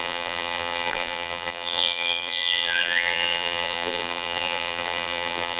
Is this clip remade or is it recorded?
remade